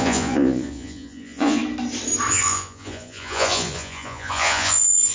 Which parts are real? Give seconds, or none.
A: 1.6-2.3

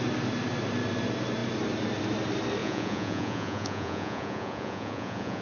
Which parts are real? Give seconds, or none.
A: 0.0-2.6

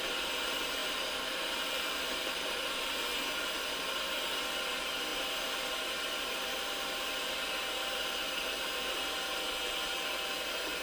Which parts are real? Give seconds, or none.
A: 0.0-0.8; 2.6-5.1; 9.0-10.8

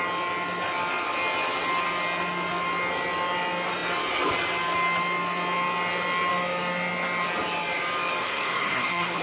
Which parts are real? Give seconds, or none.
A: 0.0-8.2

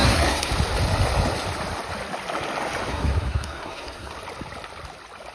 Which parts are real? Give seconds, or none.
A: 0.5-2.9; 4.1-5.3

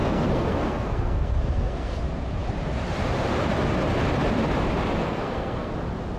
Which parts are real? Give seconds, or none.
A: 2.0-5.0; 5.7-6.2

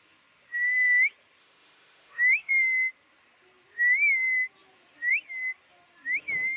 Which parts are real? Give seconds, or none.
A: 0.0-1.4; 2.5-6.6